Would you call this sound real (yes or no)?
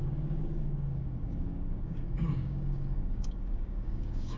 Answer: no